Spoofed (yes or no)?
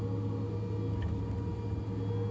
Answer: no